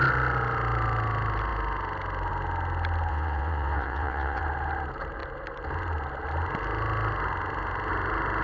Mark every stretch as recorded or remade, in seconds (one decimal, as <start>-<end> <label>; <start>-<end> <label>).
0.0-3.1 recorded; 3.1-4.4 remade; 4.4-8.4 recorded